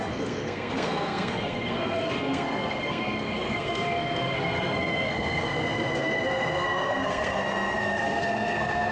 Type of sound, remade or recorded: remade